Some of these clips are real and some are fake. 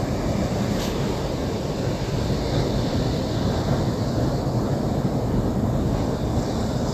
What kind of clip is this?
real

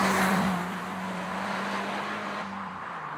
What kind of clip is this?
fake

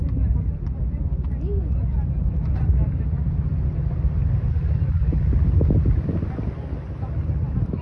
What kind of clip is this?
real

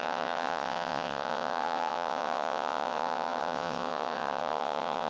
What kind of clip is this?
fake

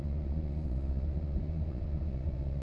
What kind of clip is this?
fake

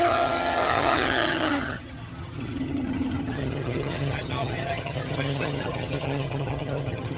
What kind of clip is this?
fake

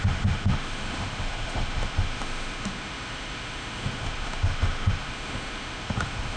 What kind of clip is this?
fake